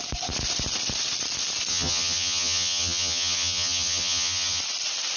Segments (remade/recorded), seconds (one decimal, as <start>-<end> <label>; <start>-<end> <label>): 0.0-1.7 recorded; 1.7-4.6 remade; 4.6-5.2 recorded